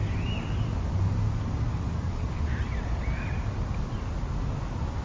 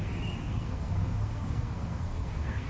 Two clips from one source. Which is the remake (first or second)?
second